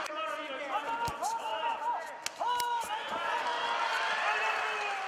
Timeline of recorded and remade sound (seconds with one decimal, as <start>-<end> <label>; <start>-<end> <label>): 0.0-1.5 recorded; 1.5-2.0 remade; 2.0-5.1 recorded